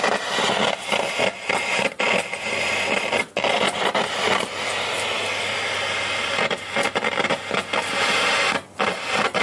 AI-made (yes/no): no